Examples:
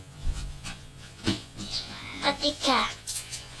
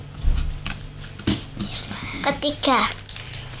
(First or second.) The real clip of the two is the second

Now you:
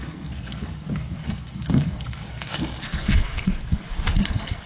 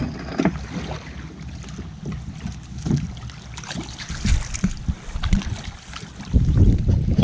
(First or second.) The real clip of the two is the second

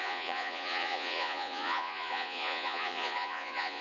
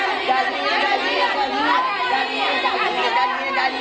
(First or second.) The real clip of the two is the second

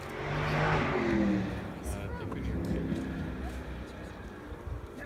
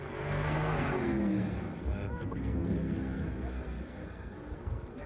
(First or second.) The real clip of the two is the first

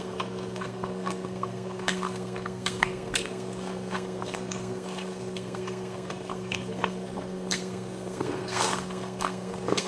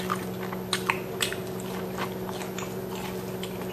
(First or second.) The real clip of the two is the second